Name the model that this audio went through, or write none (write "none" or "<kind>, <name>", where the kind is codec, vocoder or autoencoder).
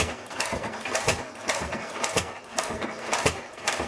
codec, SNAC